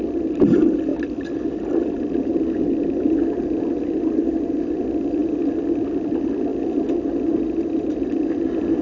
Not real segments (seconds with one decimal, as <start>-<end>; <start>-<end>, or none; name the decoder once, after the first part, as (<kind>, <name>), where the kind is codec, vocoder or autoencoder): none